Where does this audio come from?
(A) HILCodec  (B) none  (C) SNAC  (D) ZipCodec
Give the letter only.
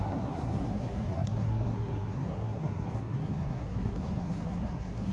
C